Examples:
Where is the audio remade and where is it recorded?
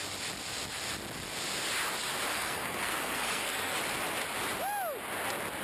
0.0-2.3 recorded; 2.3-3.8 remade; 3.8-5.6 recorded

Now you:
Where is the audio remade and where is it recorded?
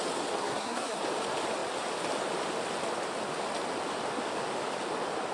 0.0-0.4 recorded; 0.4-1.0 remade; 1.0-5.3 recorded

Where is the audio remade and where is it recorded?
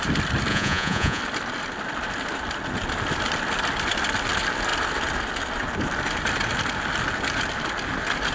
0.0-0.5 recorded; 0.5-1.2 remade; 1.2-8.3 recorded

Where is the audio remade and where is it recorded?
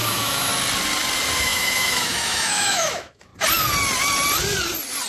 0.0-0.5 remade; 0.5-1.4 recorded; 1.4-3.3 remade; 3.3-5.1 recorded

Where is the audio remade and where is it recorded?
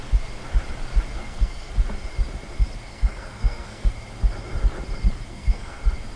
0.0-1.1 recorded; 1.1-1.7 remade; 1.7-2.9 recorded; 2.9-3.9 remade; 3.9-5.3 recorded; 5.3-5.8 remade; 5.8-6.2 recorded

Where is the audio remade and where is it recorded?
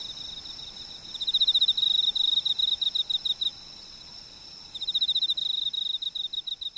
0.0-1.8 recorded; 1.8-2.9 remade; 2.9-3.5 recorded; 3.5-6.8 remade